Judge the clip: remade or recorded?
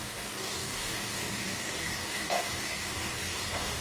remade